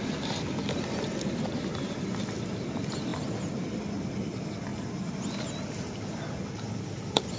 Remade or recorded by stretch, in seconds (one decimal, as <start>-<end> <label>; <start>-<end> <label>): 0.0-3.1 recorded; 3.1-3.8 remade; 3.8-4.7 recorded; 4.7-5.3 remade; 5.3-7.4 recorded